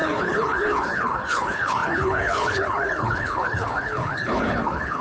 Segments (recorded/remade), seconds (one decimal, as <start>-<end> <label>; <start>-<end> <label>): 0.0-5.0 remade